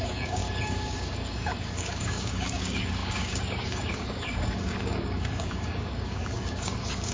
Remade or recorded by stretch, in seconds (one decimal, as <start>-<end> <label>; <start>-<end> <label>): 0.0-7.1 remade

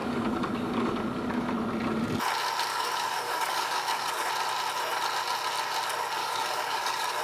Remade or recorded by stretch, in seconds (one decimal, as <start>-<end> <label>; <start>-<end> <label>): 0.0-1.5 remade; 1.5-2.7 recorded; 2.7-4.3 remade; 4.3-6.2 recorded; 6.2-7.2 remade

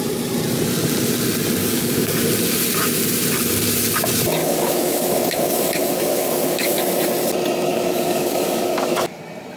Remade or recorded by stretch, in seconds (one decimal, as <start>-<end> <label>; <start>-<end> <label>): 0.0-1.6 recorded; 1.6-2.2 remade; 2.2-4.4 recorded; 4.4-6.8 remade; 6.8-7.7 recorded; 7.7-9.2 remade; 9.2-9.6 recorded

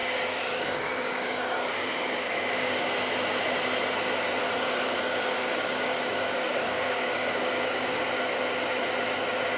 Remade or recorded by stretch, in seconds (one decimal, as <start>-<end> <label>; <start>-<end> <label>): 0.0-2.9 remade; 2.9-4.4 recorded; 4.4-8.0 remade; 8.0-9.6 recorded

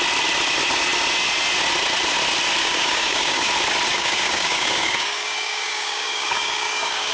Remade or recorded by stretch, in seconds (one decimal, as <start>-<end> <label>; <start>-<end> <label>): 0.0-2.6 recorded; 2.6-3.5 remade; 3.5-3.9 recorded; 3.9-7.1 remade

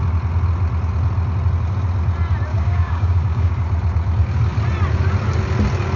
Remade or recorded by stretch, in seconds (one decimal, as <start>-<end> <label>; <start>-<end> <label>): 0.0-2.5 recorded; 2.5-3.5 remade; 3.5-6.0 recorded

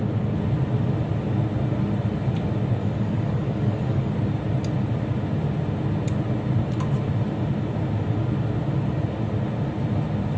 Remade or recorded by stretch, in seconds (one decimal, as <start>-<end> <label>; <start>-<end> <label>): 0.0-2.8 recorded; 2.8-4.1 remade; 4.1-10.4 recorded